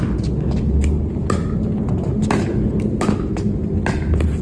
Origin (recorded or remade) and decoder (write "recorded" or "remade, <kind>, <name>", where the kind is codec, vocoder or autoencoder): recorded